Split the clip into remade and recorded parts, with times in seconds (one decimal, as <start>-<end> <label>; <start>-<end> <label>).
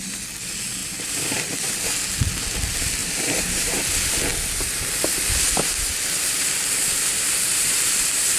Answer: 0.0-0.8 recorded; 0.8-1.7 remade; 1.7-3.0 recorded; 3.0-3.8 remade; 3.8-8.4 recorded